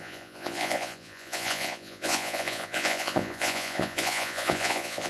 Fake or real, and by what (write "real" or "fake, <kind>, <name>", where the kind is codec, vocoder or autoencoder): fake, vocoder, Vocos